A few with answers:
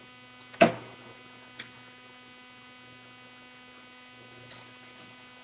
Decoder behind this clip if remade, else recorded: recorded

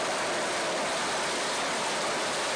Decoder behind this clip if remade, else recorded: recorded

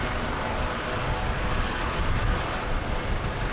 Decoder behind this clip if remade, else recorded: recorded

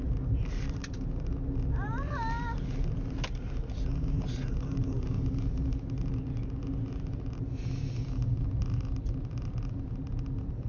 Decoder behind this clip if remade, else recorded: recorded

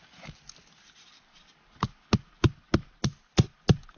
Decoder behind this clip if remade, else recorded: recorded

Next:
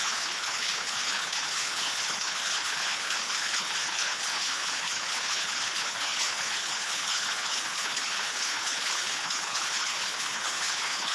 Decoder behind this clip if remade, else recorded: remade, codec, HILCodec